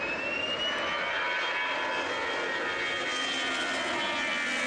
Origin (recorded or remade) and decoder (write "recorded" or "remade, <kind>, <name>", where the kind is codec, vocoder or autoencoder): recorded